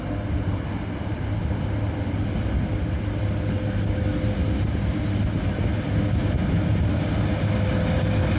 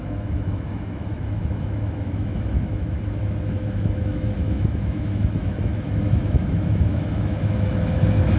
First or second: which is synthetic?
second